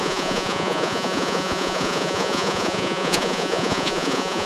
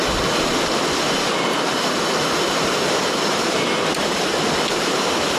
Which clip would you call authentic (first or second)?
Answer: second